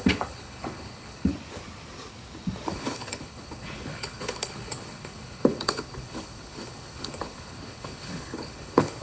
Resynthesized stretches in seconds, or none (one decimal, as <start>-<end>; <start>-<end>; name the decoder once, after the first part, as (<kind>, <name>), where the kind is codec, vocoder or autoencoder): 0.0-1.3 (codec, HILCodec); 2.7-9.0